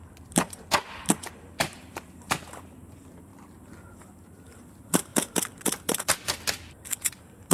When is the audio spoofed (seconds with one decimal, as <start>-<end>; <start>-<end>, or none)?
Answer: 0.0-3.3; 4.0-5.1